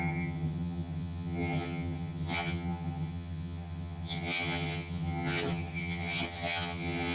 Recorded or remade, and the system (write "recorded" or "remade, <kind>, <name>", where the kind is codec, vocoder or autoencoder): remade, vocoder, HiFi-GAN